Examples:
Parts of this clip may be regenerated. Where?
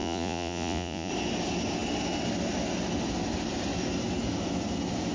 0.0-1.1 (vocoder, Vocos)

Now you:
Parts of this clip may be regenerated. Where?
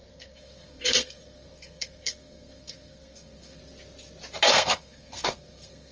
0.0-3.6 (codec, SNAC); 4.5-5.9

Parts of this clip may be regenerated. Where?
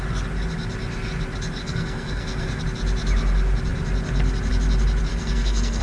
1.6-2.6 (codec, SNAC); 5.1-5.8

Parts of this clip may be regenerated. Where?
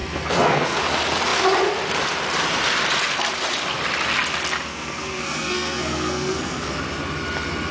0.0-0.8 (codec, SNAC); 4.7-6.8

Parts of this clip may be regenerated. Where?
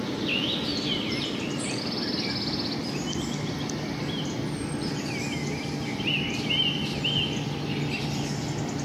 0.7-1.8 (vocoder, BigVGAN v2)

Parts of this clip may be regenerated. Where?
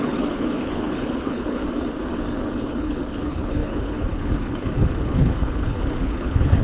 0.0-1.6 (codec, HILCodec); 2.6-6.6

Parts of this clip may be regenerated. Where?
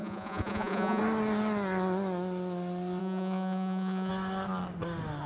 0.0-1.0 (vocoder, Vocos); 3.0-4.1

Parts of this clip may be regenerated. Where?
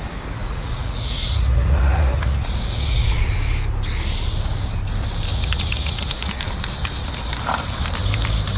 0.4-3.3 (vocoder, Vocos); 5.3-6.3